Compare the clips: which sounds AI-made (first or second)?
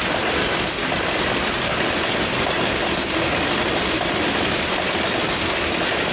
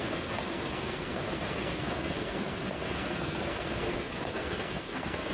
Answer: second